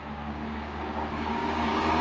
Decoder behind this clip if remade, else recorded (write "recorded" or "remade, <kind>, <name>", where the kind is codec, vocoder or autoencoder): remade, codec, DAC